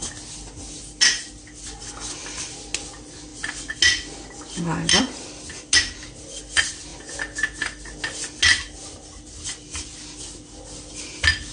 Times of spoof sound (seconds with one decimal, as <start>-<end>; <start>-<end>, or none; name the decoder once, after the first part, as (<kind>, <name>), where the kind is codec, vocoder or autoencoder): none